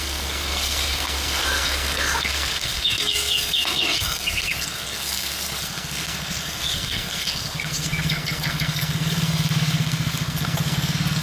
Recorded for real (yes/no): no